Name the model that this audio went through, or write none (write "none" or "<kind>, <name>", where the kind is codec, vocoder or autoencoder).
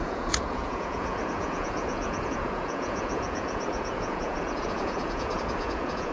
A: vocoder, Vocos